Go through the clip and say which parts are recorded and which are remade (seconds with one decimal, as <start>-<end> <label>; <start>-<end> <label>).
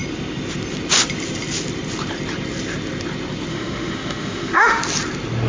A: 0.0-3.5 recorded; 3.5-4.8 remade; 4.8-5.5 recorded